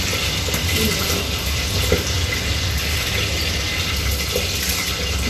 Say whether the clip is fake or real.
real